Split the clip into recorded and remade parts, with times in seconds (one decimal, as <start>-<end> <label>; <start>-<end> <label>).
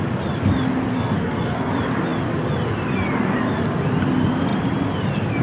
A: 0.0-0.9 recorded; 0.9-1.7 remade; 1.7-5.4 recorded